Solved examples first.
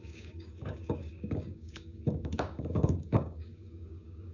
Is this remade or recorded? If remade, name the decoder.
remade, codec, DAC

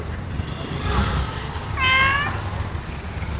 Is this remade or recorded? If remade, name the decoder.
recorded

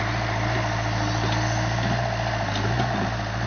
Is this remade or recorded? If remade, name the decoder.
recorded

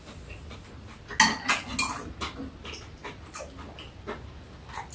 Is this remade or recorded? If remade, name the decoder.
recorded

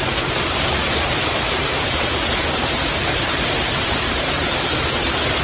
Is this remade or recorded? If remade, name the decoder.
remade, vocoder, BigVGAN v2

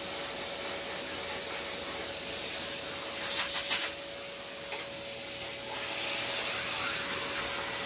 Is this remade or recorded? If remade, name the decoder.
recorded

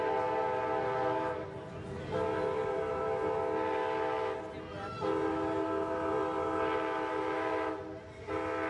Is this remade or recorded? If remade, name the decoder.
recorded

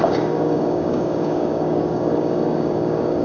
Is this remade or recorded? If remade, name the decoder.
remade, codec, DAC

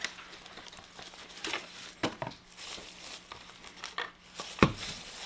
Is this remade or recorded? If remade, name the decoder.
recorded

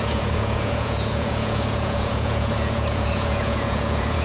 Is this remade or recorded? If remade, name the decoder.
remade, vocoder, Vocos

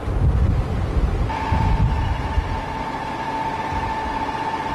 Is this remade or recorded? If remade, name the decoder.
recorded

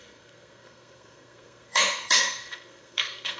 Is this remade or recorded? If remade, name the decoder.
remade, codec, SNAC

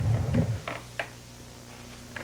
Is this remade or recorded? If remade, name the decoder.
recorded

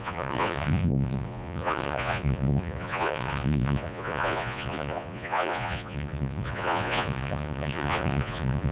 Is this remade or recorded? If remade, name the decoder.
remade, vocoder, Vocos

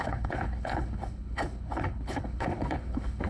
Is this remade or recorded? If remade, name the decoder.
remade, codec, HILCodec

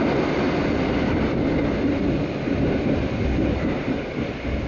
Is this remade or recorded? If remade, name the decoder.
recorded